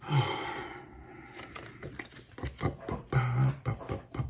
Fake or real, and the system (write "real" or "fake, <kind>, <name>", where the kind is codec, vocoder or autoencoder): real